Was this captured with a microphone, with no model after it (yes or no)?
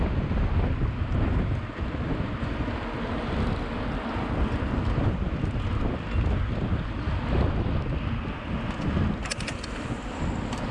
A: yes